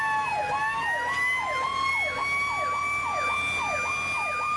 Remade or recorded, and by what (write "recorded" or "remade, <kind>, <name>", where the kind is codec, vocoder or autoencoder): recorded